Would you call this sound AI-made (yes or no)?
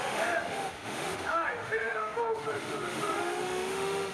yes